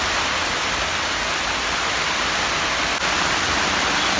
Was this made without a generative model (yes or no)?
yes